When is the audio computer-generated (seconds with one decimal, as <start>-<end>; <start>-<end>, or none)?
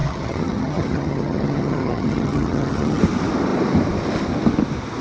0.0-3.0